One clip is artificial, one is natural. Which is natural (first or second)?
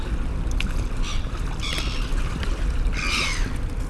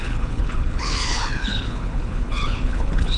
first